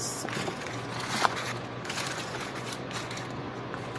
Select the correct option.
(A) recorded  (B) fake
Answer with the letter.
B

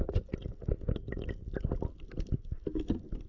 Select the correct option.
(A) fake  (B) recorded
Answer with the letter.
B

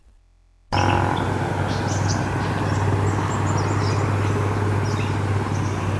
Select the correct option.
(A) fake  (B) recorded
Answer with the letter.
B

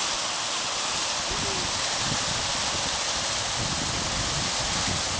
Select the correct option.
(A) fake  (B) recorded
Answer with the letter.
B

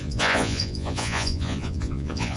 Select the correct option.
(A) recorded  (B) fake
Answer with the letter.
B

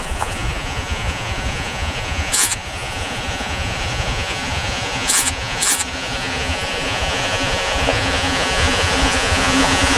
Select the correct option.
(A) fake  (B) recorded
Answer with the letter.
A